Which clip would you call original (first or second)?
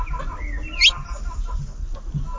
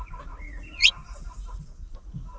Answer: first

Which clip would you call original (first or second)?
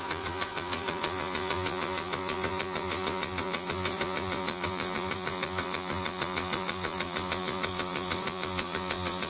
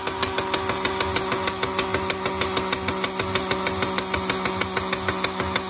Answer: second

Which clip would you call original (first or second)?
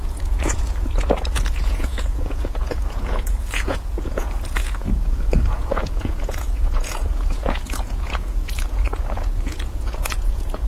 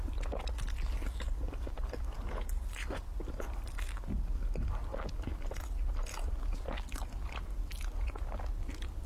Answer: second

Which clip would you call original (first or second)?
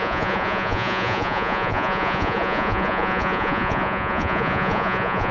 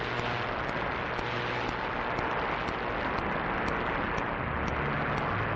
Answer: second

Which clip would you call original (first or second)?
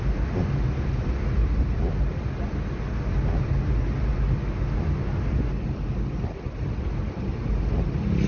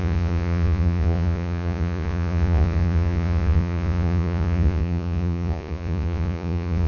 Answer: first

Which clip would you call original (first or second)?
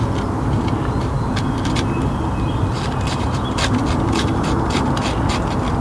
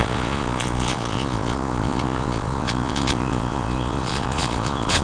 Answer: first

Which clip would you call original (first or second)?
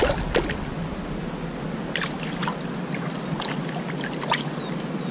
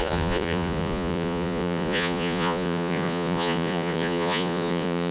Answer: first